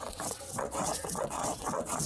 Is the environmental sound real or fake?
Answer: fake